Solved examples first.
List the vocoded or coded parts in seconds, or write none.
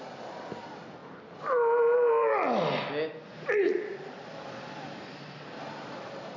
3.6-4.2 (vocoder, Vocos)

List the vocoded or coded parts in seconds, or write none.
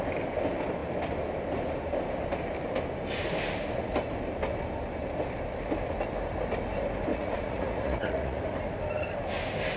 7.1-8.4 (vocoder, Vocos)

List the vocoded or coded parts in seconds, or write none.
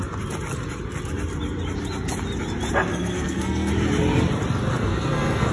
2.9-3.7 (codec, SNAC); 4.9-5.5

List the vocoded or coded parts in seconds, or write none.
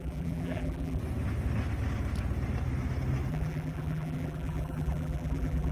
0.0-1.0 (vocoder, BigVGAN v2); 3.3-5.7